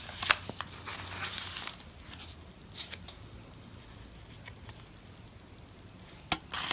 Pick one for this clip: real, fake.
real